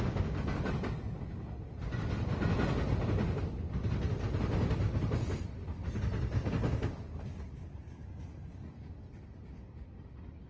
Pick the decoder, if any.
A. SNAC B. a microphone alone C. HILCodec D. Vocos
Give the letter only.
B